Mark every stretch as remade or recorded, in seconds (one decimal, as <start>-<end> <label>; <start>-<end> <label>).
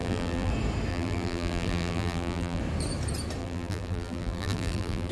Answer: 0.0-0.5 remade; 0.5-0.9 recorded; 0.9-2.6 remade; 2.6-3.4 recorded; 3.4-5.1 remade